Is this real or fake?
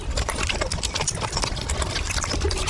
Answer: real